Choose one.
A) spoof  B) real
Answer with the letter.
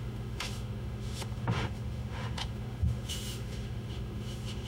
A